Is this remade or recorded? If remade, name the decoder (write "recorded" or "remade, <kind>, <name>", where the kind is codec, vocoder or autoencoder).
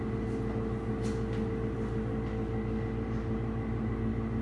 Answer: recorded